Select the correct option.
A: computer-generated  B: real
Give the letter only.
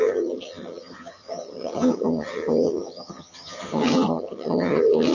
A